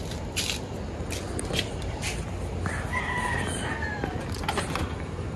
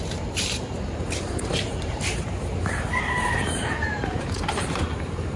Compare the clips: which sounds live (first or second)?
first